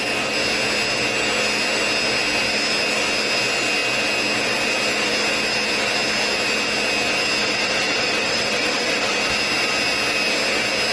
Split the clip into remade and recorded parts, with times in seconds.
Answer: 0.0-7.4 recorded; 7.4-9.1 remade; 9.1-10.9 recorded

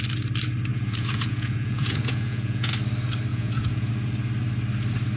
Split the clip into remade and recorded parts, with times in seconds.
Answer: 0.0-0.7 recorded; 0.7-2.7 remade; 2.7-3.3 recorded; 3.3-3.9 remade; 3.9-5.2 recorded

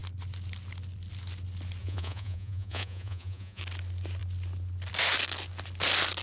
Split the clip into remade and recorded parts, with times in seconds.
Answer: 0.0-1.8 recorded; 1.8-3.6 remade; 3.6-6.2 recorded

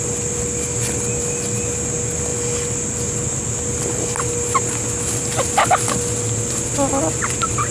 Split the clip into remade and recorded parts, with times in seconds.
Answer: 0.0-7.7 recorded

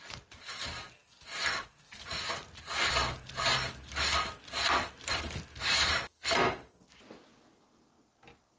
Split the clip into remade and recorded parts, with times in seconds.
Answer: 0.0-8.6 recorded

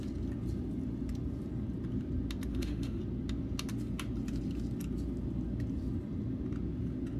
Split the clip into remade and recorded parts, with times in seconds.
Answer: 0.0-2.5 recorded; 2.5-3.0 remade; 3.0-7.2 recorded